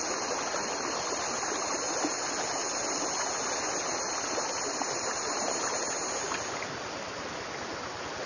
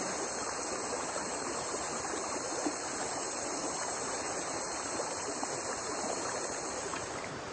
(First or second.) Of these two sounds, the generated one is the second